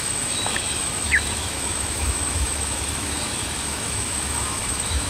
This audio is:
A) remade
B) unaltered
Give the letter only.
A